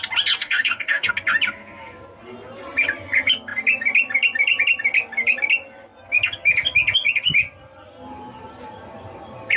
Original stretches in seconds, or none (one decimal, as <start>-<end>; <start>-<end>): 0.0-0.4; 1.1-9.6